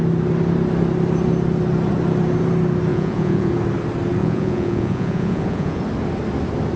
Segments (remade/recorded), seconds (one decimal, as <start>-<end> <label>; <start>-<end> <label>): 0.0-2.9 recorded; 2.9-3.5 remade; 3.5-4.2 recorded; 4.2-5.8 remade; 5.8-6.8 recorded